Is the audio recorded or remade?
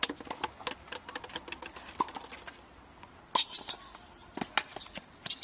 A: recorded